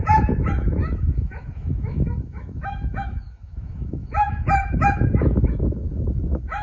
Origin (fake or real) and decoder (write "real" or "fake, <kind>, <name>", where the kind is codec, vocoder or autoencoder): fake, autoencoder, DAC-VAE